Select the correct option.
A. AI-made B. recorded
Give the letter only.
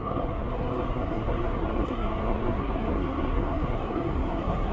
A